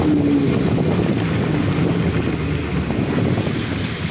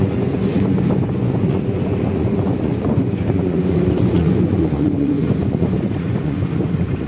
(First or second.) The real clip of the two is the first